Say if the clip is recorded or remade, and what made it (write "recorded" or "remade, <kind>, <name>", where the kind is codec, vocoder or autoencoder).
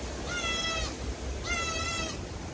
recorded